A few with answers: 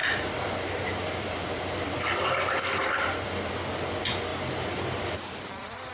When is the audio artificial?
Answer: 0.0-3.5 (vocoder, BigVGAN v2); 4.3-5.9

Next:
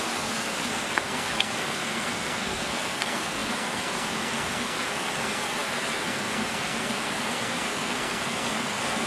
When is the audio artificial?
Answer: 0.0-9.1 (codec, SNAC)